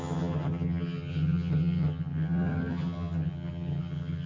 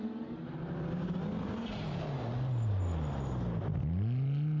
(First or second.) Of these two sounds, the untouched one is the second